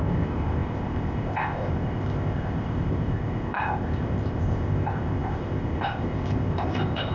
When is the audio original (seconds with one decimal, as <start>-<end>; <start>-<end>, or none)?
none